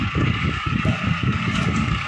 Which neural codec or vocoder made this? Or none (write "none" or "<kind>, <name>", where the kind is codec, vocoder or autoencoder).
codec, DAC